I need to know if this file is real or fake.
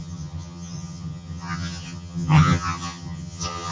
fake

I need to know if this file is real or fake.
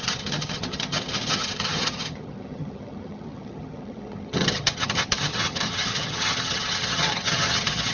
fake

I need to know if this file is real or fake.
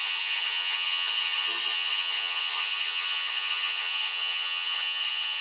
fake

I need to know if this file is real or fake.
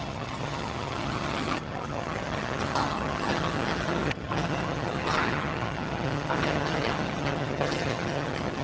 fake